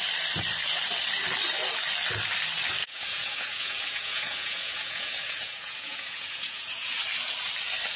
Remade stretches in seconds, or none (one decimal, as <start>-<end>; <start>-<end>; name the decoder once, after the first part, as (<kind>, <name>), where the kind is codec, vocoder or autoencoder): 2.8-7.0 (vocoder, Vocos)